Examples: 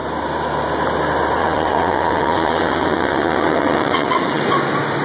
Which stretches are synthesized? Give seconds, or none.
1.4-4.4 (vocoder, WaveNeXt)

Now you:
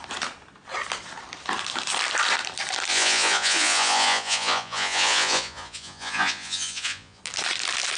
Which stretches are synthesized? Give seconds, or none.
2.9-7.2 (vocoder, Vocos)

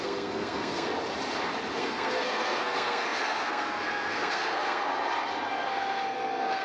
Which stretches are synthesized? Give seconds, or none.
0.0-0.9 (codec, SNAC); 1.8-4.9; 5.5-6.6

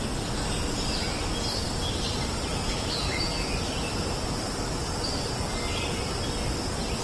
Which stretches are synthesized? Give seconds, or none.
2.5-3.5 (vocoder, BigVGAN v2)

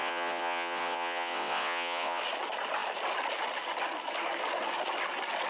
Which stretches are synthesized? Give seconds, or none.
0.0-2.2 (vocoder, WaveNeXt)

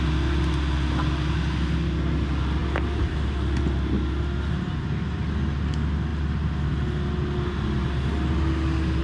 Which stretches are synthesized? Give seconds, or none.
none

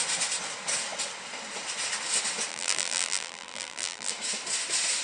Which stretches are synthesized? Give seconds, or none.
2.5-4.1 (vocoder, BigVGAN v2)